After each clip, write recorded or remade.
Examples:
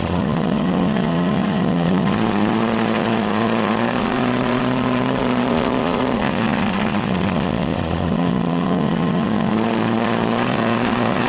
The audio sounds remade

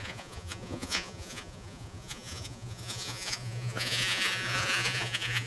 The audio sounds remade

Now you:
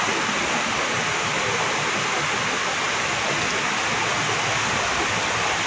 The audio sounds recorded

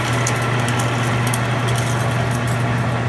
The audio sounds recorded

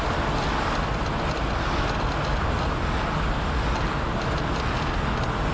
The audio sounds recorded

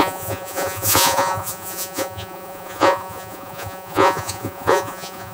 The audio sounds remade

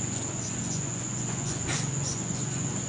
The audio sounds remade